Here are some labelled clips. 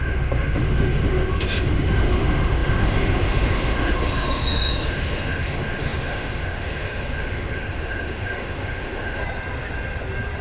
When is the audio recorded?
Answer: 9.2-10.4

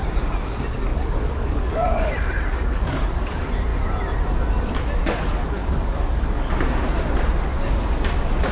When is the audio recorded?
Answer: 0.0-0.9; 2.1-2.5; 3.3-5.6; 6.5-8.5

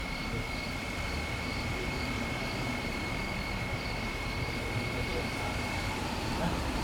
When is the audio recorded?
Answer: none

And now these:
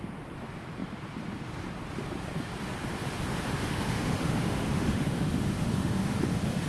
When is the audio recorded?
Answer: 0.0-3.5

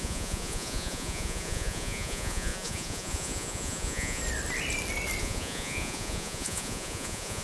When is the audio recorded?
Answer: 4.2-5.2

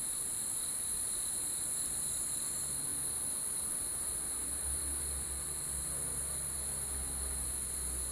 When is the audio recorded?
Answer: 0.0-8.1